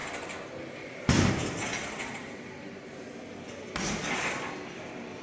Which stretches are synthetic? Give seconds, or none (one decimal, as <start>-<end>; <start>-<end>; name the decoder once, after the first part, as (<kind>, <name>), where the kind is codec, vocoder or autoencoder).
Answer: 0.0-1.3 (vocoder, BigVGAN v2); 1.8-5.2